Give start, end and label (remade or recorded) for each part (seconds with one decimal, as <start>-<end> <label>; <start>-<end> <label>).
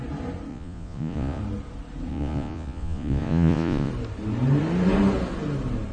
0.0-0.5 recorded; 0.5-1.4 remade; 1.4-2.1 recorded; 2.1-3.9 remade; 3.9-5.9 recorded